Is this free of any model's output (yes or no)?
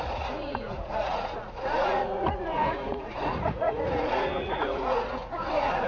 no